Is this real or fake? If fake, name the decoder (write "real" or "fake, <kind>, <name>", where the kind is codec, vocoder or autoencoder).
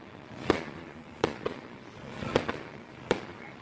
fake, vocoder, Vocos